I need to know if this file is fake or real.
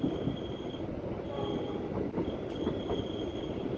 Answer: real